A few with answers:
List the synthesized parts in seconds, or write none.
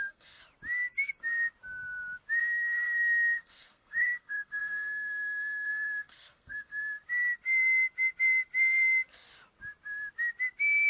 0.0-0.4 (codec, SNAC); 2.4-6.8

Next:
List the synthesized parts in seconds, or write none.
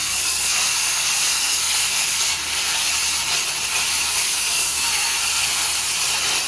0.0-2.9 (codec, SNAC); 4.0-5.8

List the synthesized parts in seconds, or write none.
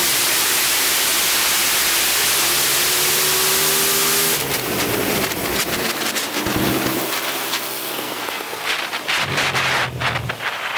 7.5-8.7 (codec, SNAC)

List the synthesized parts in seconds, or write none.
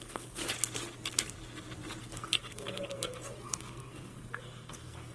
0.0-0.4 (codec, SNAC); 2.0-5.1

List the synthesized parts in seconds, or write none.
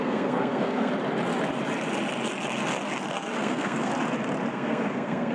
0.0-0.9 (codec, SNAC); 3.1-3.9; 4.5-5.3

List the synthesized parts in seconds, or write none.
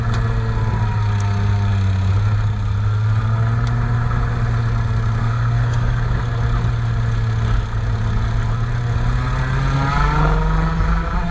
5.2-6.2 (codec, SNAC)